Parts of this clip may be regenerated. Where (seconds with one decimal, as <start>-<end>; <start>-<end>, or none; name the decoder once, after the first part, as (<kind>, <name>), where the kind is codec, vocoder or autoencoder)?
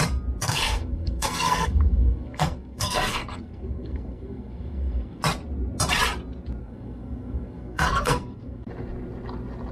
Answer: 0.4-5.2 (codec, SNAC); 6.6-8.7